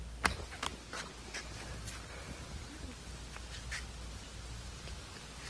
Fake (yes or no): no